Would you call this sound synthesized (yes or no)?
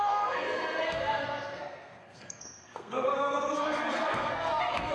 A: yes